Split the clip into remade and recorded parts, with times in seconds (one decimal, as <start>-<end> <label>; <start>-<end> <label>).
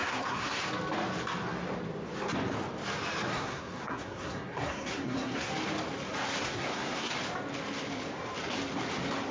0.0-0.6 remade; 0.6-3.3 recorded; 3.3-5.5 remade; 5.5-6.4 recorded; 6.4-7.1 remade; 7.1-9.3 recorded